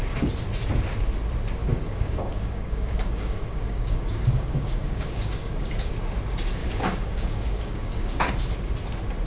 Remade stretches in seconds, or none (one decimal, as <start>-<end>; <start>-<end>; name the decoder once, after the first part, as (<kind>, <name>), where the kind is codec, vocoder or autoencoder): 1.6-5.9 (codec, DAC); 6.6-8.3